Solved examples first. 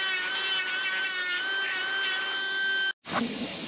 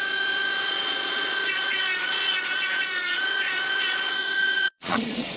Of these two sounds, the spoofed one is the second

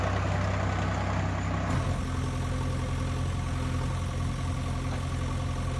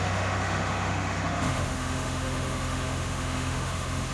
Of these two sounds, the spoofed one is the second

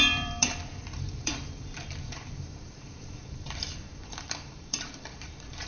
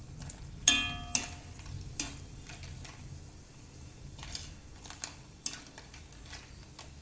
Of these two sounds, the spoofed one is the first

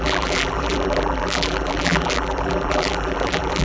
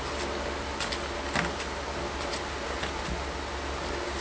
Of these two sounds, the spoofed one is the first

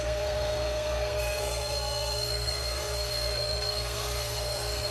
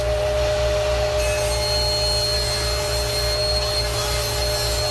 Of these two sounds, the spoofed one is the first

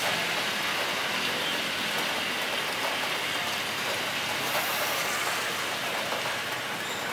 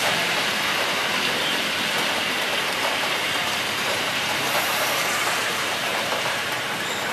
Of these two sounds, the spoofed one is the second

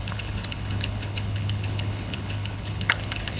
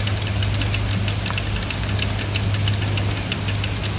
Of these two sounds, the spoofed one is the first